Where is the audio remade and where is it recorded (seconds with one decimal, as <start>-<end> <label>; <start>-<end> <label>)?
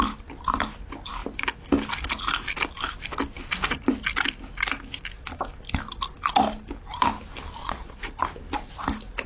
0.0-7.6 recorded; 7.6-8.2 remade; 8.2-9.3 recorded